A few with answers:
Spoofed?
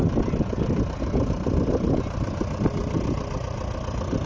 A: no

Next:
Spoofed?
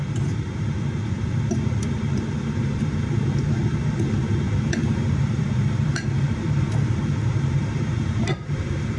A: yes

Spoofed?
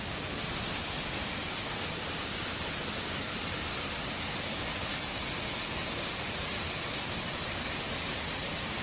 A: no